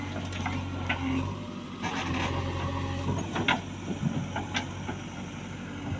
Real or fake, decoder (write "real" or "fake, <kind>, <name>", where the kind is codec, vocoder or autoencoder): real